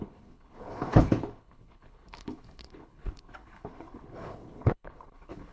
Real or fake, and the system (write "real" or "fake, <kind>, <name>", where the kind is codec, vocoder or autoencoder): fake, codec, HILCodec